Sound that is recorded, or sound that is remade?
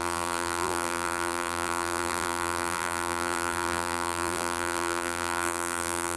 remade